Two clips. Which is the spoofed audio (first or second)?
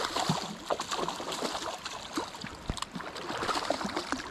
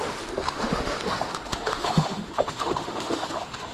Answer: second